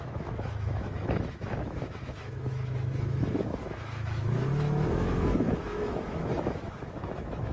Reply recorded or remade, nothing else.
remade